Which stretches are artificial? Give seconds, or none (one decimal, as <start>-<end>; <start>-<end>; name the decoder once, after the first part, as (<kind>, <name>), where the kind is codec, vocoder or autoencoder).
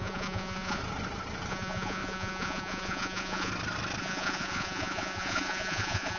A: 0.0-0.8 (vocoder, Vocos); 1.5-3.5; 4.0-6.2